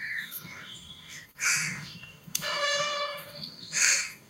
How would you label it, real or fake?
fake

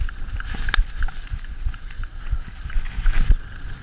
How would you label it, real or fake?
real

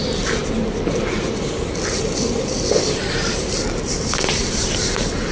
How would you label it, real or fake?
real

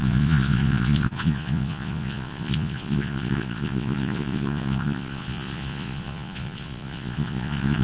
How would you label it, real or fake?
fake